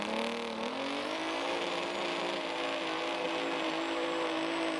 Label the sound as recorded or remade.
recorded